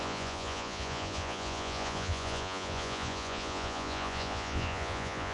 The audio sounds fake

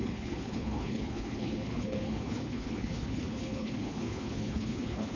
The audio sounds fake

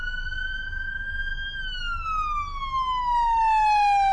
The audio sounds real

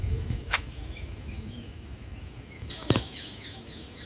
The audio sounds fake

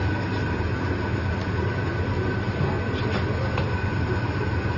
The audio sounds real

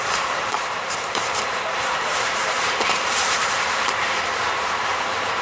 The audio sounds fake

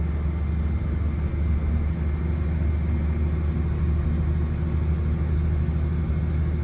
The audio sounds real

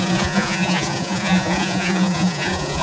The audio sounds fake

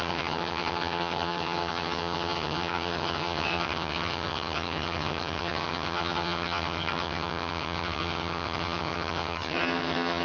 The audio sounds fake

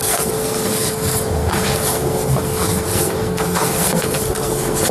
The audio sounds fake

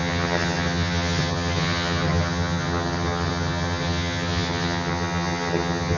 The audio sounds fake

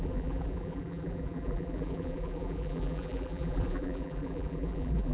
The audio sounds fake